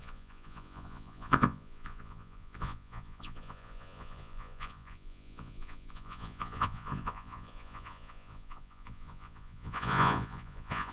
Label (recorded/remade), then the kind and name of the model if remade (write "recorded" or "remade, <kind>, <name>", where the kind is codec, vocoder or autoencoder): remade, vocoder, Vocos